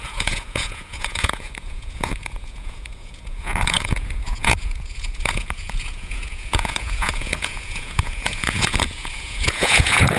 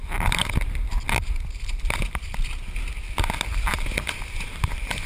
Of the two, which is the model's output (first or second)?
first